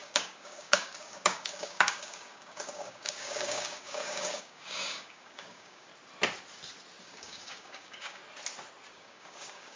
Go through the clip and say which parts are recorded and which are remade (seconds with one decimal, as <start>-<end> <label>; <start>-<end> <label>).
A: 0.0-5.9 remade; 5.9-7.0 recorded; 7.0-8.2 remade; 8.2-8.9 recorded; 8.9-9.8 remade